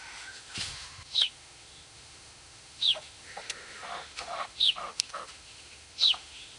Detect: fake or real fake